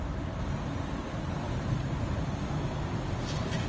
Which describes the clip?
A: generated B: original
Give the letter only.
B